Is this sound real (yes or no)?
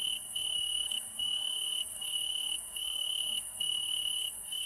no